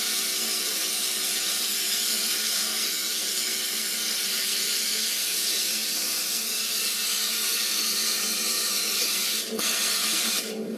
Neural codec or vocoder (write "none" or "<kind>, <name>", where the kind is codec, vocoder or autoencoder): codec, SNAC